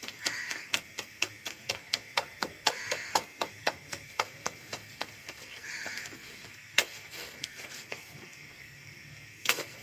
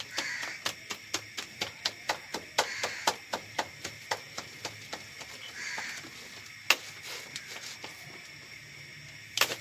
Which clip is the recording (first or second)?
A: second